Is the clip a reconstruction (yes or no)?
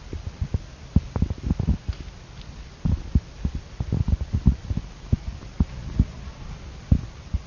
no